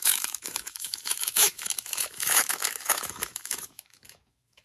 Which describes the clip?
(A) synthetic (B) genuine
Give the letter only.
A